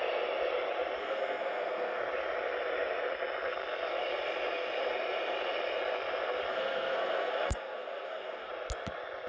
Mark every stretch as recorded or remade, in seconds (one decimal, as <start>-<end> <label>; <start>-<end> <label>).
0.0-1.0 recorded; 1.0-2.0 remade; 2.0-6.5 recorded; 6.5-8.5 remade; 8.5-9.3 recorded